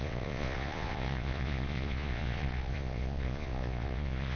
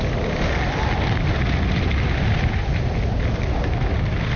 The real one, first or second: second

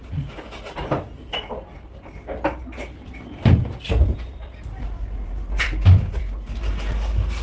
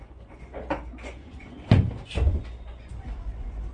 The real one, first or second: first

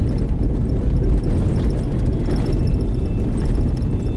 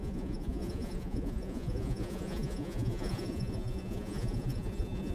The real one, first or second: first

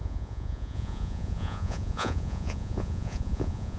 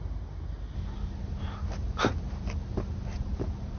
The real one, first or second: second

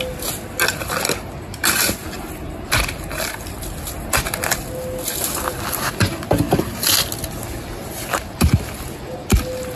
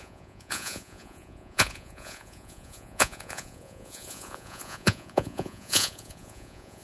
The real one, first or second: first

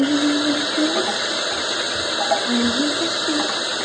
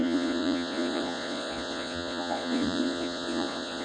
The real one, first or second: first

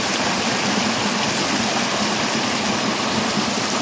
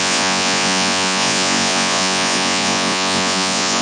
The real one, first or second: first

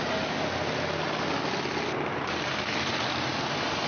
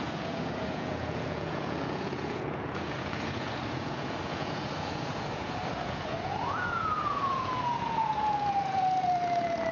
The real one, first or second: first